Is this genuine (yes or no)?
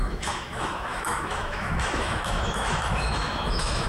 no